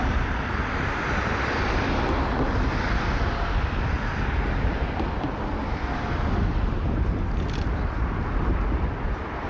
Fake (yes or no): no